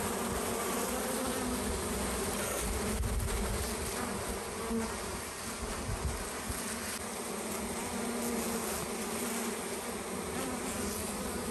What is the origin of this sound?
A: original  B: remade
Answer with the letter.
A